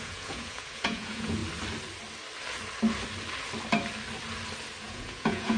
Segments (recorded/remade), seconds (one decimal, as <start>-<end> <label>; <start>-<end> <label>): 0.0-1.4 remade; 1.4-4.8 recorded; 4.8-5.6 remade